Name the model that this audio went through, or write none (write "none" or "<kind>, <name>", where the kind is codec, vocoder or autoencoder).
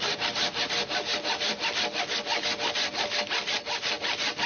none